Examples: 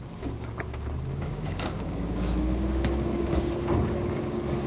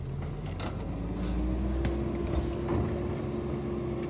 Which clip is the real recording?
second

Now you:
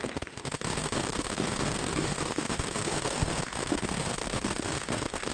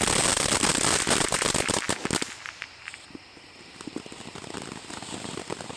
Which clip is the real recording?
second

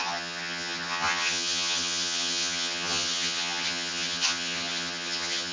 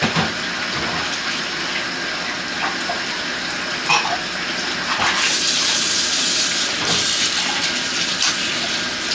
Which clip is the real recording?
second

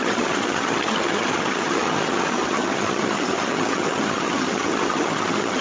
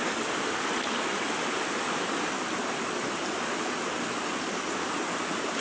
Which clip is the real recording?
second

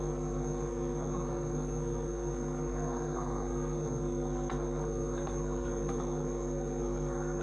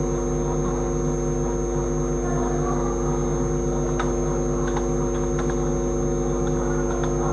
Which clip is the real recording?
second